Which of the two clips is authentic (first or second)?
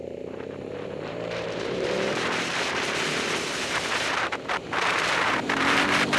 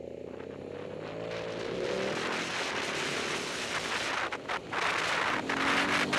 second